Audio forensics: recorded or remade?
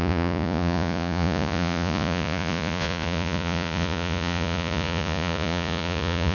remade